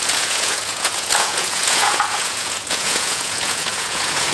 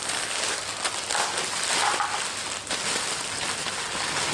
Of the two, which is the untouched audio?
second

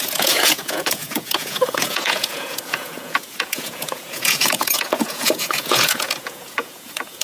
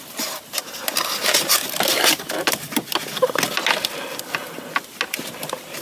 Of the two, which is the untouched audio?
second